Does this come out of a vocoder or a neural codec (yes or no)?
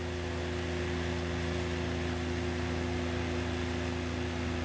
no